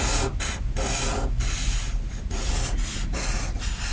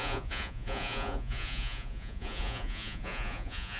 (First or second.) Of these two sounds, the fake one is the second